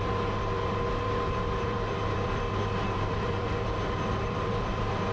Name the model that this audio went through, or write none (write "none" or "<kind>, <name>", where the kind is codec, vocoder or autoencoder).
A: vocoder, BigVGAN v2